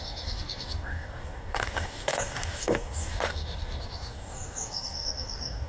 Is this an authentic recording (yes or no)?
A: no